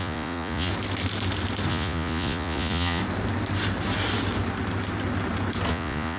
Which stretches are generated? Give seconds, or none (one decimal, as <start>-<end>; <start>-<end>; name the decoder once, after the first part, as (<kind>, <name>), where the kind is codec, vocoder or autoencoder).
0.0-0.7 (vocoder, Vocos); 1.7-3.0; 5.7-6.2